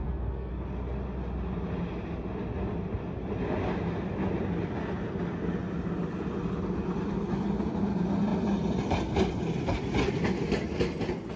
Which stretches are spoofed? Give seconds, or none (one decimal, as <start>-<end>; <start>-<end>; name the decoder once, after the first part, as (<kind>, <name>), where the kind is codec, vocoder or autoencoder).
0.0-0.5 (codec, SNAC)